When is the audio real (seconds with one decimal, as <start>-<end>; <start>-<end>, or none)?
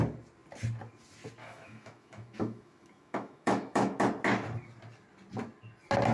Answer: 0.0-1.4; 4.0-6.1